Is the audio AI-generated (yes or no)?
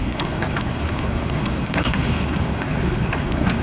yes